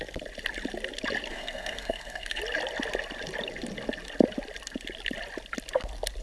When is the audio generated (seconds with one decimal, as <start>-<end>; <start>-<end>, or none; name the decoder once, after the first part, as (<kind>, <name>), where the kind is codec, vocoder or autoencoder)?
1.3-2.4 (codec, SNAC)